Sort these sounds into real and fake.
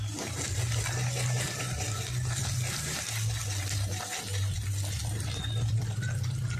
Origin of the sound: real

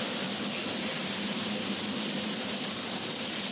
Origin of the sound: real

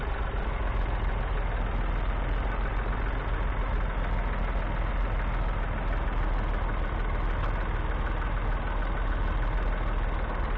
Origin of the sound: real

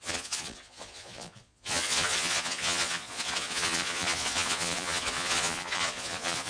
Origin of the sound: fake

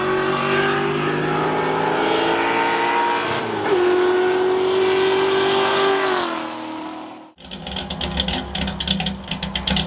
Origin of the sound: real